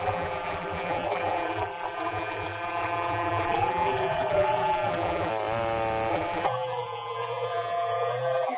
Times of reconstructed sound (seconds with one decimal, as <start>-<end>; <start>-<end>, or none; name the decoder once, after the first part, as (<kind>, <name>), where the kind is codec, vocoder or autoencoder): 0.0-5.3 (vocoder, BigVGAN v2); 6.1-8.6